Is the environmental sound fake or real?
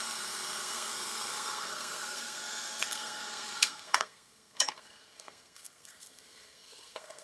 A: fake